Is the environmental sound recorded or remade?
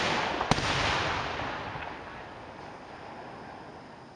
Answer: recorded